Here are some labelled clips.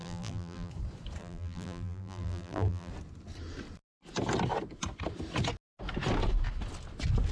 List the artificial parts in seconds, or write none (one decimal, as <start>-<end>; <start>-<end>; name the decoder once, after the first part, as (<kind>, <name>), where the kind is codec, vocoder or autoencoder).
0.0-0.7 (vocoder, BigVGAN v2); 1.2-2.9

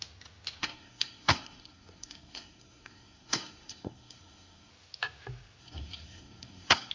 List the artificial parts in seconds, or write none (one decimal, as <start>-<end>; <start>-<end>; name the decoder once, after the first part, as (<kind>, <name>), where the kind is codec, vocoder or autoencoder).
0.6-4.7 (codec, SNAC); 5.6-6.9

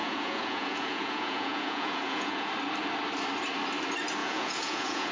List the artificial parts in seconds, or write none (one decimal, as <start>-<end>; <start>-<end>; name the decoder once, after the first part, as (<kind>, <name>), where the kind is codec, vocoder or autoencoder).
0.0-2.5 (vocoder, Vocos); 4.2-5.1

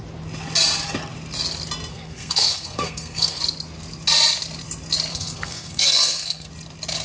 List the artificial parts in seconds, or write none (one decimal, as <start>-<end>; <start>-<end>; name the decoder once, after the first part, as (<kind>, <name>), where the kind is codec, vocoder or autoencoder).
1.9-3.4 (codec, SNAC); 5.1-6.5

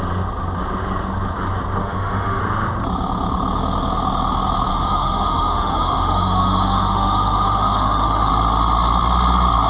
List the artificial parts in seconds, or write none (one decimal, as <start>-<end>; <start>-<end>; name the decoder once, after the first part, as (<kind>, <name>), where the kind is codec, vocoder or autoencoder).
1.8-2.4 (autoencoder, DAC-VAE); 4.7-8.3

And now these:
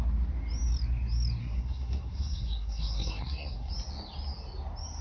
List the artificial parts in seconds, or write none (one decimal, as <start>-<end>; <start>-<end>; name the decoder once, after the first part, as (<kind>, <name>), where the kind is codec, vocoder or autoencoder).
1.4-3.7 (codec, SNAC)